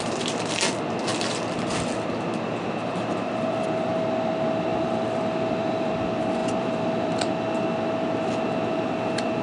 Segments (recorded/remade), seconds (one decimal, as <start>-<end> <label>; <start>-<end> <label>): 0.0-4.7 recorded; 4.7-5.9 remade; 5.9-6.4 recorded; 6.4-7.3 remade; 7.3-9.4 recorded

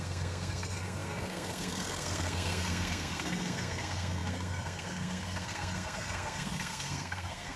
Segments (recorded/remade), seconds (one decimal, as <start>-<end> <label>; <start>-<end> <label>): 0.0-7.6 remade